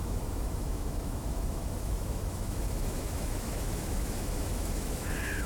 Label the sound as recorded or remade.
remade